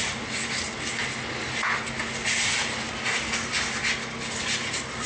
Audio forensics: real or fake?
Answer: real